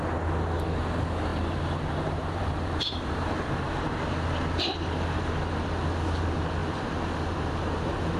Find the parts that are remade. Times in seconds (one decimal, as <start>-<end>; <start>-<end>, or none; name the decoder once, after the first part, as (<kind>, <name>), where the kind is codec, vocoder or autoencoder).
1.3-2.8 (vocoder, BigVGAN v2)